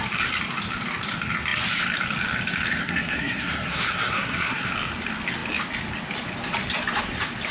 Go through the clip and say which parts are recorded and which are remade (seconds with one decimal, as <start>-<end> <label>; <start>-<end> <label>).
0.0-2.8 recorded; 2.8-4.7 remade; 4.7-7.5 recorded

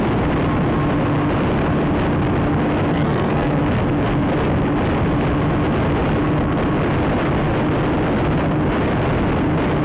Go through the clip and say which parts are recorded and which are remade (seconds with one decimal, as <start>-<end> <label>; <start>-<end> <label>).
0.0-2.9 recorded; 2.9-3.6 remade; 3.6-9.8 recorded

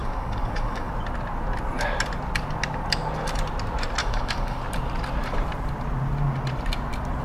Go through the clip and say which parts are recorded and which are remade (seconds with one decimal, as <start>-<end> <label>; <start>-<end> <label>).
0.0-0.9 remade; 0.9-4.0 recorded; 4.0-4.6 remade; 4.6-7.2 recorded

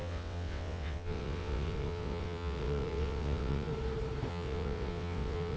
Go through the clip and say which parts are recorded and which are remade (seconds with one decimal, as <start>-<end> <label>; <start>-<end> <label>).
0.0-3.7 remade; 3.7-4.3 recorded; 4.3-5.6 remade

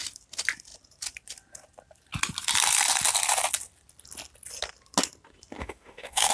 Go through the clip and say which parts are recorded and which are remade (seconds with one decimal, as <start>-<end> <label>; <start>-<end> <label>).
0.0-5.6 recorded; 5.6-6.3 remade

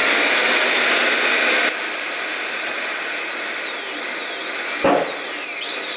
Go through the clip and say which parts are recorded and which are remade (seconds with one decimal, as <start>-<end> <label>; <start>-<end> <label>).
0.0-6.0 recorded

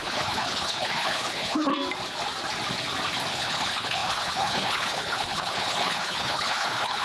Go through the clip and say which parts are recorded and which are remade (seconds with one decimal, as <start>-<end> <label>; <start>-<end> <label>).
0.0-1.7 remade; 1.7-3.3 recorded; 3.3-7.0 remade